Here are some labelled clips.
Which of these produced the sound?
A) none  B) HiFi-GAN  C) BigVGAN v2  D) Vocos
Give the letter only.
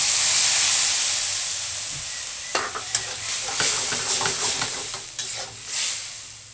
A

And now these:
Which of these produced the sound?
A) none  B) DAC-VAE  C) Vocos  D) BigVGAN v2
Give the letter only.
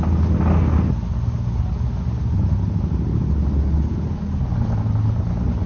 A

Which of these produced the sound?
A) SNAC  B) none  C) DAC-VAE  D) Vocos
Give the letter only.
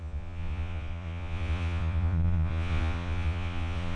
D